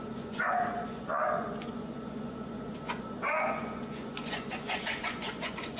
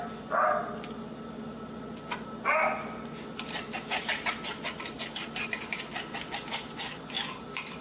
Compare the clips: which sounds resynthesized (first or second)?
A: first